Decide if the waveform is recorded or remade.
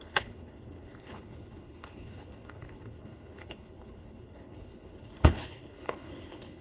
remade